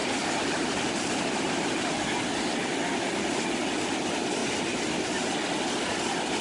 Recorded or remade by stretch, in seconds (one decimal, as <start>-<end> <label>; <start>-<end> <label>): 0.0-2.1 remade; 2.1-4.4 recorded; 4.4-6.0 remade; 6.0-6.4 recorded